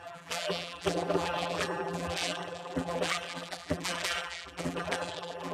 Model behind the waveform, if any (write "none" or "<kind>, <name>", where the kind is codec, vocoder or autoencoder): vocoder, BigVGAN v2